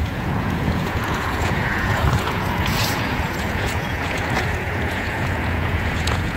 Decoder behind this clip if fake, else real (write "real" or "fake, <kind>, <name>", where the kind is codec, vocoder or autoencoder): fake, vocoder, Vocos